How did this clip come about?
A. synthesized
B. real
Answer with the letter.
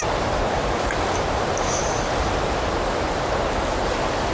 B